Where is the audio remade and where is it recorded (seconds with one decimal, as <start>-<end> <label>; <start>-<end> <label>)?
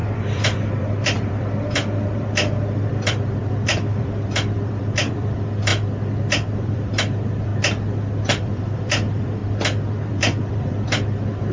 0.0-5.7 remade; 5.7-6.5 recorded; 6.5-7.5 remade; 7.5-8.2 recorded; 8.2-9.4 remade; 9.4-10.1 recorded; 10.1-11.5 remade